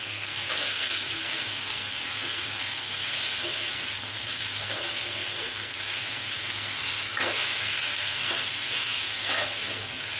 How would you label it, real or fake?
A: fake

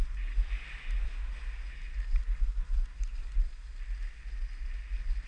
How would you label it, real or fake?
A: real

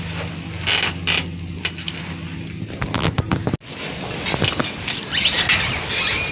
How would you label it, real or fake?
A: real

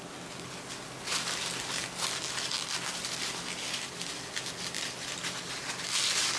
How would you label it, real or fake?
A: real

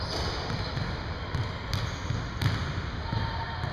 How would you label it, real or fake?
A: real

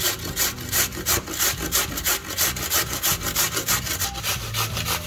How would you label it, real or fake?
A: real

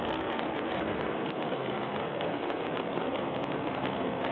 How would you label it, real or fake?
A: fake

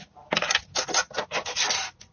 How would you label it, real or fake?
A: real